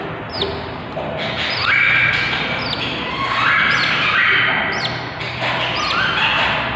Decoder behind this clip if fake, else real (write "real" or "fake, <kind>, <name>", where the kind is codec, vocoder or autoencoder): real